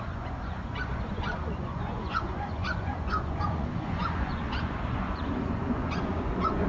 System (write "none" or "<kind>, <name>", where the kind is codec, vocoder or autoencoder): vocoder, Vocos